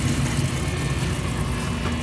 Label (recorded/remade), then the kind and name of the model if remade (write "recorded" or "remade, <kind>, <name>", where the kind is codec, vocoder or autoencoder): recorded